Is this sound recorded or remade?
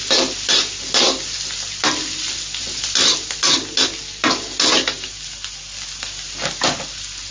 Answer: recorded